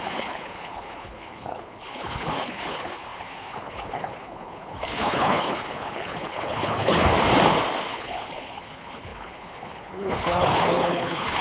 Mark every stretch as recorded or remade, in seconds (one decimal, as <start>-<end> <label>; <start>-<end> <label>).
0.0-7.0 remade; 7.0-7.9 recorded; 7.9-11.4 remade